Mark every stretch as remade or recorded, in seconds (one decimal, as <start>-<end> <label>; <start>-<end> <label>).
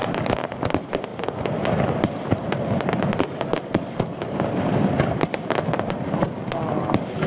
0.0-7.3 recorded